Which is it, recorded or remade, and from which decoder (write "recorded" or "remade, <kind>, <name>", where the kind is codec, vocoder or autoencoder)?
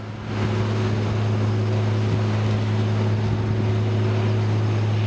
recorded